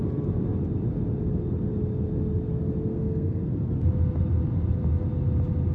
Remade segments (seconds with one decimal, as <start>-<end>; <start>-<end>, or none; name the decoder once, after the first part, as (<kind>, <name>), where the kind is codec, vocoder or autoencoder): 2.9-3.5 (codec, SNAC)